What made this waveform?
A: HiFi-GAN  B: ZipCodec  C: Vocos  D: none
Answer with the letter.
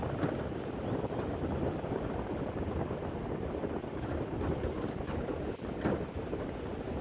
D